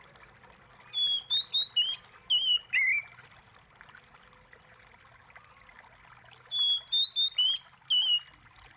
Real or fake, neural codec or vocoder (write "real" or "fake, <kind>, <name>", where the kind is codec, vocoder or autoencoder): real